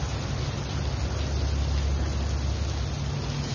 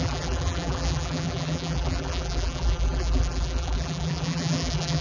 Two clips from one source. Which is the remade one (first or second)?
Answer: second